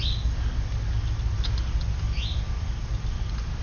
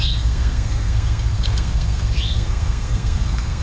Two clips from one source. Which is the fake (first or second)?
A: second